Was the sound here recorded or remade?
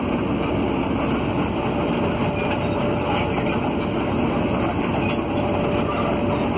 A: recorded